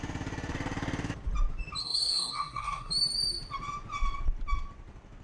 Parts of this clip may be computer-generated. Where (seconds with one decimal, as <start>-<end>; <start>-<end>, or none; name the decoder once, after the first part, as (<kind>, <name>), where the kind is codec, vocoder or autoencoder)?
1.8-2.9 (codec, SNAC)